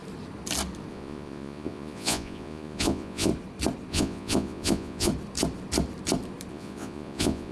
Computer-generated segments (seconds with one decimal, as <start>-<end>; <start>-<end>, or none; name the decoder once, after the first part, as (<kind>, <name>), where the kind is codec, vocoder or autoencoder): 0.9-3.3 (vocoder, Vocos); 3.9-5.1; 6.5-7.5